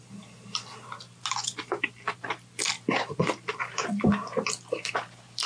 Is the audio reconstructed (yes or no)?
no